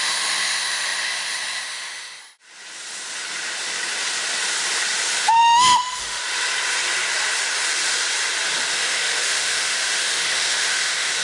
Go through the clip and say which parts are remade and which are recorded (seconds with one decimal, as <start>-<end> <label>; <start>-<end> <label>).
0.0-2.2 remade; 2.2-5.4 recorded; 5.4-6.2 remade; 6.2-8.7 recorded; 8.7-11.2 remade